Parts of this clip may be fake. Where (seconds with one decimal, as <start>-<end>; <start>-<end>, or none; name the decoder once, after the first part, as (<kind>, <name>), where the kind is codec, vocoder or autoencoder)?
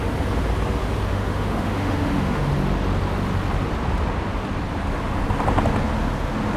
1.1-2.5 (autoencoder, DAC-VAE)